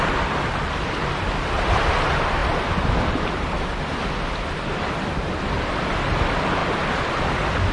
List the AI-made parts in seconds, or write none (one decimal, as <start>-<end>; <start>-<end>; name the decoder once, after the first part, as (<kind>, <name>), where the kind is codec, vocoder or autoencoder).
2.4-3.2 (vocoder, BigVGAN v2); 6.6-7.1